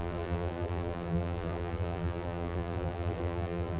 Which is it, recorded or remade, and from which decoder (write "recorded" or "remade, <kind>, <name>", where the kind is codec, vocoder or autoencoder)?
remade, vocoder, BigVGAN v2